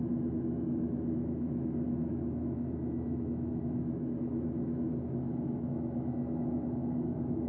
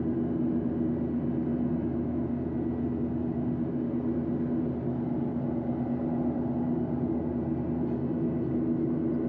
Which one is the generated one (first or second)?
first